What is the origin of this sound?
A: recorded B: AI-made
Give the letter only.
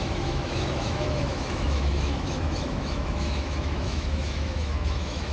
B